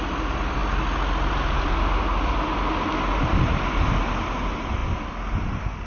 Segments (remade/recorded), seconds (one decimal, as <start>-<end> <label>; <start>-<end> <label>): 0.0-5.9 recorded